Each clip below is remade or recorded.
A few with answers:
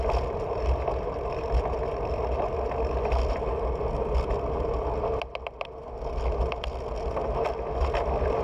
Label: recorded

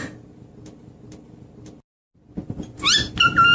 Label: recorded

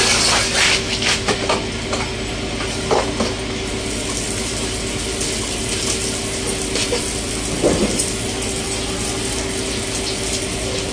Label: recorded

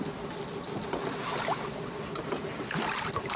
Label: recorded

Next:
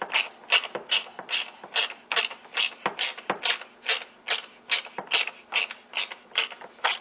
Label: recorded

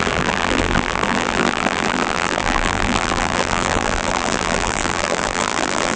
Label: remade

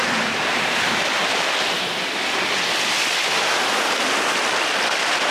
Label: recorded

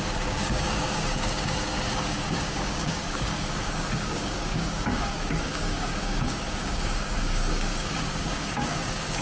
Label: remade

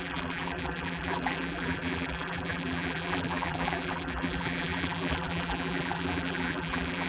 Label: remade